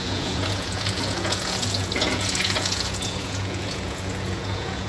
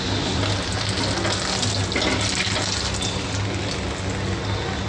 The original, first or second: second